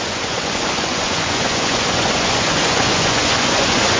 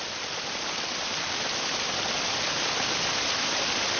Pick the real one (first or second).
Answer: second